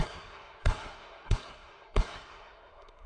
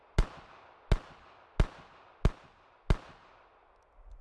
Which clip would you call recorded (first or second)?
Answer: second